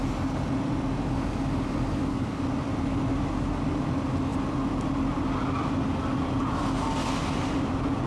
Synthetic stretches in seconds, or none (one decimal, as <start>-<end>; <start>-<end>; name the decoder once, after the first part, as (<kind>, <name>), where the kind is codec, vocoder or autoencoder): 2.0-2.5 (codec, DAC)